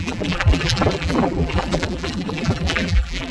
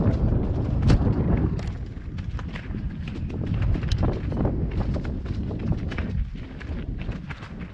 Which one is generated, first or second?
first